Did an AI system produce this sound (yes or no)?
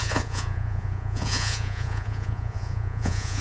yes